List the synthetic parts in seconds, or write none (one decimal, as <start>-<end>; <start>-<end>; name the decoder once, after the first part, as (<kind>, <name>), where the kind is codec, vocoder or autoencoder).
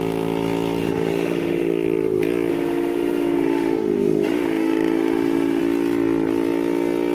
0.8-1.7 (autoencoder, DAC-VAE); 2.5-5.6